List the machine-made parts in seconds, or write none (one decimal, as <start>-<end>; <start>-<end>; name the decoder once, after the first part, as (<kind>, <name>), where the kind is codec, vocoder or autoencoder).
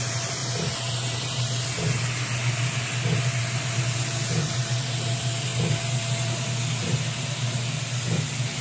0.0-0.4 (vocoder, BigVGAN v2); 1.2-5.5; 6.8-8.6